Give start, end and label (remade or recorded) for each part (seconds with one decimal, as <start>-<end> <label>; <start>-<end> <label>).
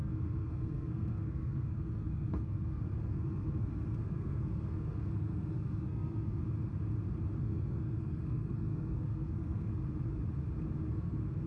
0.0-6.4 remade; 6.4-7.4 recorded; 7.4-9.7 remade; 9.7-10.9 recorded; 10.9-11.5 remade